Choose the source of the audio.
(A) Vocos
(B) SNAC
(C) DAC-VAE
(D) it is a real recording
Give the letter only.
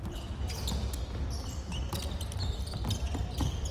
D